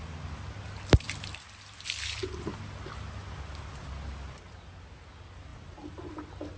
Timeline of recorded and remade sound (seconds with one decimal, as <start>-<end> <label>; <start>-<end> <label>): 0.0-5.5 recorded; 5.5-6.1 remade; 6.1-6.6 recorded